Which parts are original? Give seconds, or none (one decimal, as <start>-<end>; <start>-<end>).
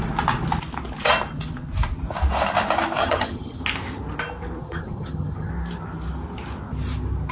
0.0-3.0; 3.6-4.6; 5.5-7.3